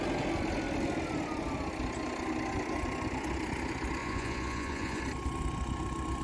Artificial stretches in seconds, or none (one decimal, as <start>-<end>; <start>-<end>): 4.0-5.0